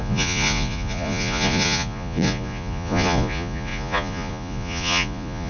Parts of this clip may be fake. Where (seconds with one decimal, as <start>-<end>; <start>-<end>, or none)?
0.0-5.5